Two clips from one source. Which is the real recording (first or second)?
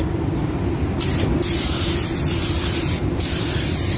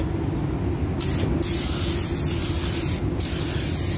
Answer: second